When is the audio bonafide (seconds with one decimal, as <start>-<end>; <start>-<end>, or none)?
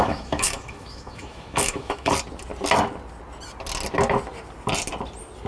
2.1-5.5